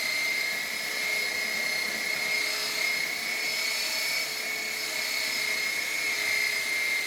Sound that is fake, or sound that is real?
real